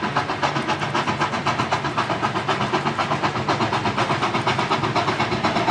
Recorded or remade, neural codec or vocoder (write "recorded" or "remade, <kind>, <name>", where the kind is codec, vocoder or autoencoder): recorded